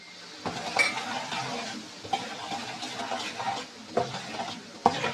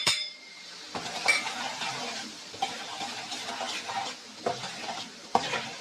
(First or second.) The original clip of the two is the first